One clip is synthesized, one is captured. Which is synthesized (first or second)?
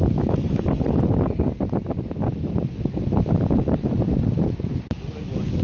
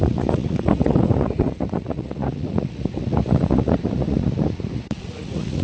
second